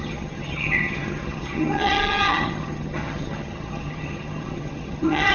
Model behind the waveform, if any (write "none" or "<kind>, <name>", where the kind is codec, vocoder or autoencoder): vocoder, HiFi-GAN